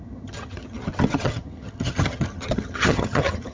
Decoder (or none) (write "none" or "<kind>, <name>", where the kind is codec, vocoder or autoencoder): vocoder, HiFi-GAN